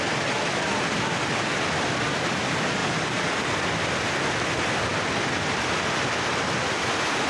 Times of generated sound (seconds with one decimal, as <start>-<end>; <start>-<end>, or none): 2.8-3.5